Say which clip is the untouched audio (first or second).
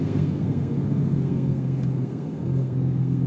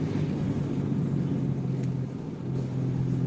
second